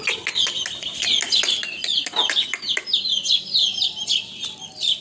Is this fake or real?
real